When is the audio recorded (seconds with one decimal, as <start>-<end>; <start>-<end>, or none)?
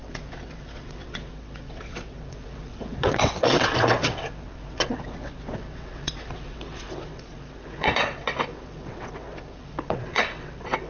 none